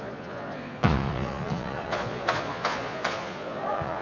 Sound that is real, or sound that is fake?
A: fake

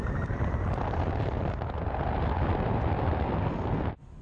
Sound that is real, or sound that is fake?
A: real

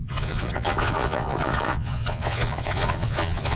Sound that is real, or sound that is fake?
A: fake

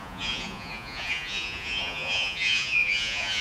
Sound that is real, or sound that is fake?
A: fake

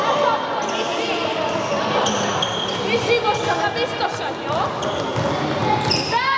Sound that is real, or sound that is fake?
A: real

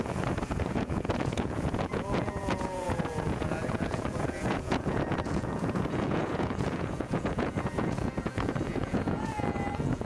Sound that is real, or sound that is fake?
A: fake